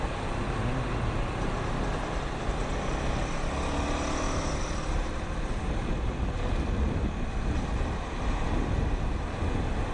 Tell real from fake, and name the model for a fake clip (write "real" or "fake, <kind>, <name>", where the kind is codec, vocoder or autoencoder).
real